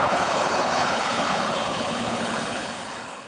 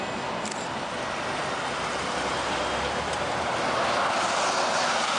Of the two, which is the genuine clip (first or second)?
second